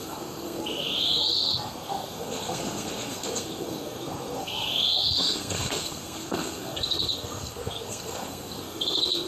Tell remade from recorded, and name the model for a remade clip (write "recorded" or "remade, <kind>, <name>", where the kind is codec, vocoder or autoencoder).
remade, codec, SNAC